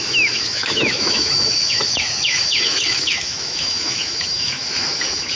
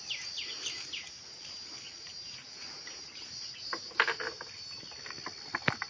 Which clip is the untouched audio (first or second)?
second